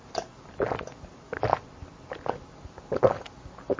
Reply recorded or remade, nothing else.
recorded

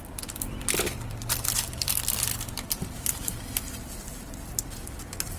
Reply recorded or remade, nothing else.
remade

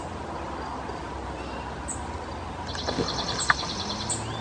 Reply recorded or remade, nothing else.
recorded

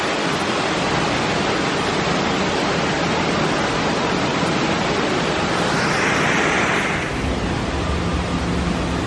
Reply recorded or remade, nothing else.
recorded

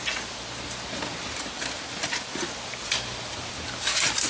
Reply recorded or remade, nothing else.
recorded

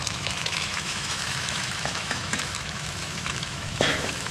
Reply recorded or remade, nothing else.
remade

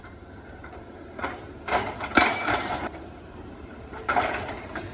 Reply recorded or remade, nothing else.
remade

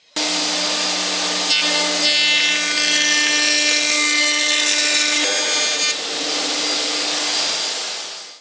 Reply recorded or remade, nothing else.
recorded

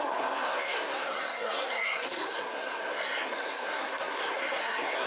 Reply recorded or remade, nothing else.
remade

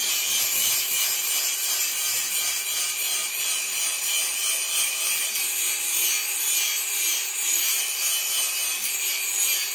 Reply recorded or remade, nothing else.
remade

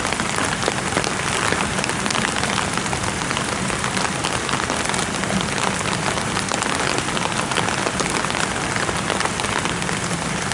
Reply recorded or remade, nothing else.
recorded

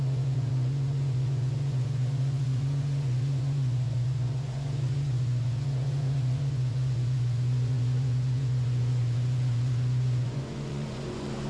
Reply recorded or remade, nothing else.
remade